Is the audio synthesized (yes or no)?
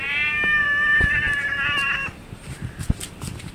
no